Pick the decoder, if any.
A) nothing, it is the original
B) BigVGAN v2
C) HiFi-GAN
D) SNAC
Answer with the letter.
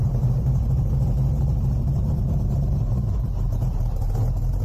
B